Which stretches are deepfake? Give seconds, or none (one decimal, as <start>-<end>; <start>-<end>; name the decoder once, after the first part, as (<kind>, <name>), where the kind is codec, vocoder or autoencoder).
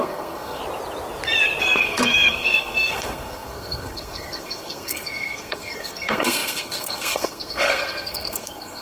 0.0-0.6 (codec, SNAC); 1.6-8.8